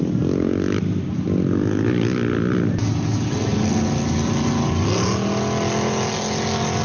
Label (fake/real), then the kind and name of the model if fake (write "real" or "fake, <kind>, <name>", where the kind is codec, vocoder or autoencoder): real